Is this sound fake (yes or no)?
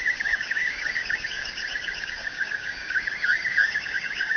yes